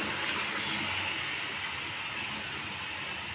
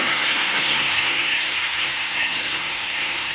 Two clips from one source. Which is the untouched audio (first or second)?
first